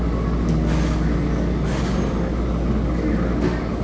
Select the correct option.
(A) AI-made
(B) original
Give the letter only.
B